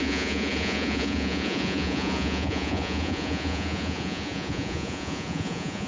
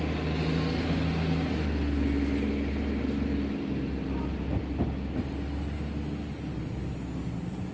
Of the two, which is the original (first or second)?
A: second